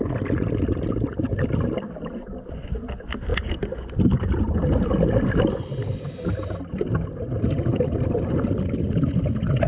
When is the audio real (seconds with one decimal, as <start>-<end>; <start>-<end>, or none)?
0.0-9.7